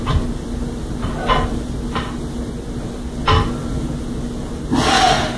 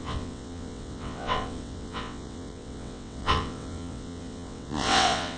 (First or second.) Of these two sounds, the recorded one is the first